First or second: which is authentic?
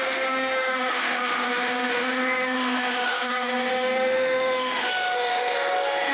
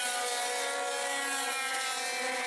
second